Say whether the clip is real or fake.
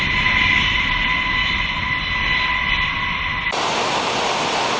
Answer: real